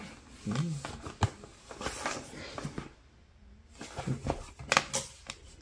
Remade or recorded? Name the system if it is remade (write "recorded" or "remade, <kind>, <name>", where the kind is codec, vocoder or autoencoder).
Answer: recorded